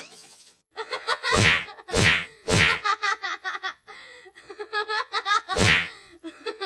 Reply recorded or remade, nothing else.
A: remade